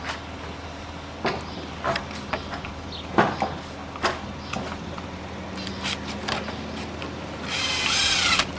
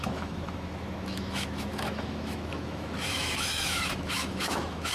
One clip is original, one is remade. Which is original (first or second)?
first